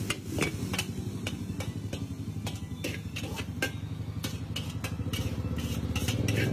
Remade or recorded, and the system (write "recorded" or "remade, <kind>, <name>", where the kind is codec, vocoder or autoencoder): recorded